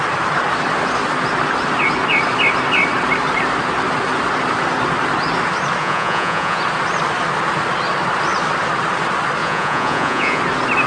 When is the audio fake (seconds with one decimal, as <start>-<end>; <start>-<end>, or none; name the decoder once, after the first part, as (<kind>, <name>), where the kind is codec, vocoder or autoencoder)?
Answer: 5.8-6.6 (vocoder, Vocos); 9.4-10.4